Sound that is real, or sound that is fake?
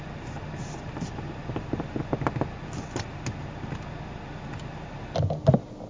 real